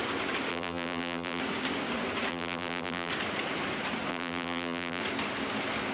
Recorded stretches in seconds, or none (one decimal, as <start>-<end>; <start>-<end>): 0.0-0.5; 1.4-2.3; 3.1-4.1; 5.0-5.9